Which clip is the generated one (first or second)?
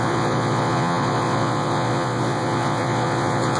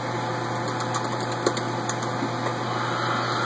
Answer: first